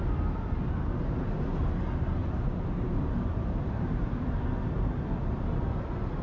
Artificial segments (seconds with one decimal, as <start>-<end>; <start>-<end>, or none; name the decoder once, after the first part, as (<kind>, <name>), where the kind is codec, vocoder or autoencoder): 2.2-4.4 (vocoder, BigVGAN v2)